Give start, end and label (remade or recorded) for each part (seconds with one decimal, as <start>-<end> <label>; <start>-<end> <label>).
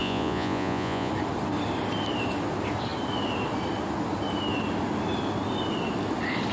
0.0-1.1 remade; 1.1-6.5 recorded